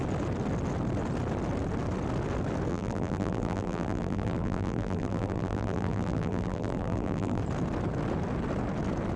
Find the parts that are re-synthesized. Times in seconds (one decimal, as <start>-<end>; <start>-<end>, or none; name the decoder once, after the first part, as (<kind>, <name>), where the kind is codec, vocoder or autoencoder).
2.7-7.4 (vocoder, BigVGAN v2)